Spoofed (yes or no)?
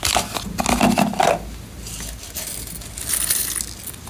no